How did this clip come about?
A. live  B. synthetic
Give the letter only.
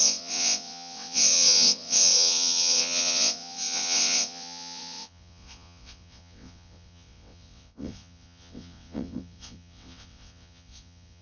B